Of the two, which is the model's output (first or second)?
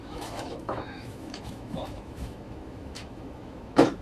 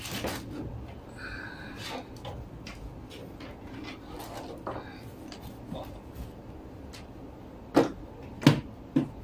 first